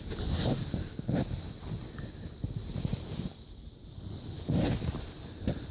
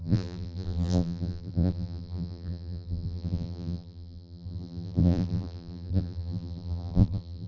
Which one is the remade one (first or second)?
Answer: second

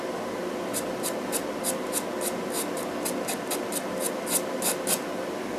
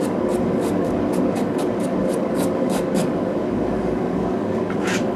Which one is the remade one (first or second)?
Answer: second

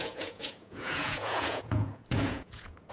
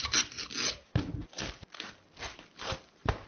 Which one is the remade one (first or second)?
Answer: first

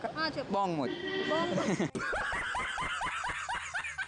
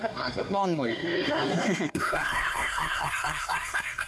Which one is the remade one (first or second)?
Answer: second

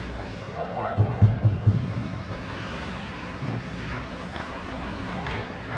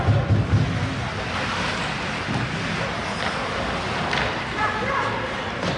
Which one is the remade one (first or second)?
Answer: first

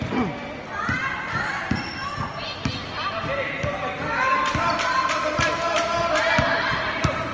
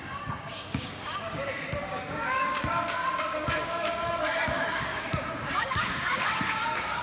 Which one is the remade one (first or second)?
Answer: second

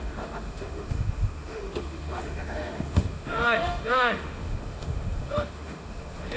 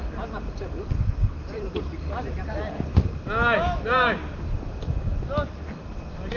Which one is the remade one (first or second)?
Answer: first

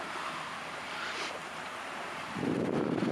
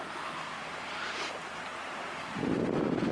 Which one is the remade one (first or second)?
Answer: first